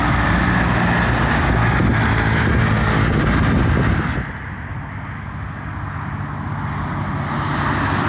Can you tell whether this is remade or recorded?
recorded